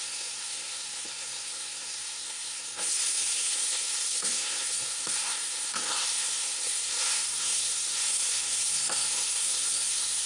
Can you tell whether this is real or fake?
fake